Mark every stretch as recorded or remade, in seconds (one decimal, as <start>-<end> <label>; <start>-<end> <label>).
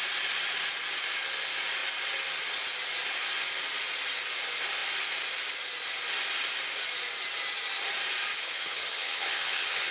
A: 0.0-8.3 recorded; 8.3-9.9 remade